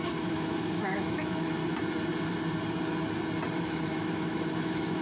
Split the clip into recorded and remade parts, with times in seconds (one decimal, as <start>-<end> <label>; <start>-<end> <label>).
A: 0.0-1.6 remade; 1.6-3.5 recorded; 3.5-5.0 remade